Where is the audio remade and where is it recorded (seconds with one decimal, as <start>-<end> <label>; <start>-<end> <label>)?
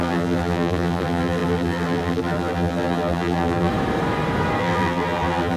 0.0-3.7 remade; 3.7-4.6 recorded; 4.6-5.6 remade